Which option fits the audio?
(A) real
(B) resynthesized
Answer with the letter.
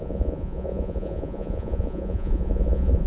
B